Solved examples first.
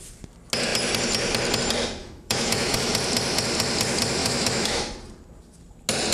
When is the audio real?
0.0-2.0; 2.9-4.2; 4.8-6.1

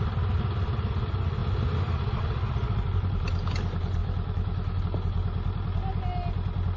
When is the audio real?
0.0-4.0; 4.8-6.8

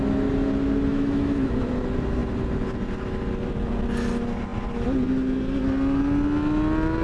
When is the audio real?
0.0-0.9; 1.6-7.0

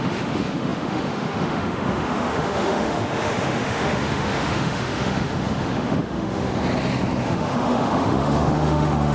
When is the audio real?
6.5-7.2

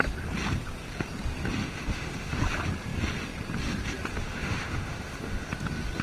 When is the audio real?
0.0-1.6; 2.4-4.1; 5.5-6.0